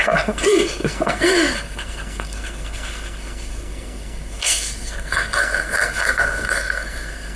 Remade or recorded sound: remade